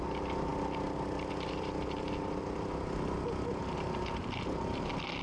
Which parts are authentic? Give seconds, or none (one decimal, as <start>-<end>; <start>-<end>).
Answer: 0.0-5.2